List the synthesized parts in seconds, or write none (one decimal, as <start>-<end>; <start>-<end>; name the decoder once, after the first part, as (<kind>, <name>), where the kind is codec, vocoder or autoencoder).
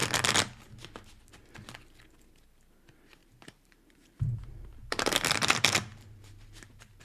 3.2-7.0 (vocoder, BigVGAN v2)